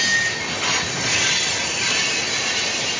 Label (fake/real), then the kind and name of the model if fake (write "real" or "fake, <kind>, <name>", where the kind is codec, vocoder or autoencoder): real